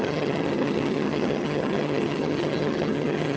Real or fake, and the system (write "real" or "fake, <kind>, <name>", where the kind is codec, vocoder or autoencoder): fake, vocoder, HiFi-GAN